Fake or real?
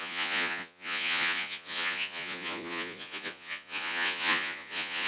fake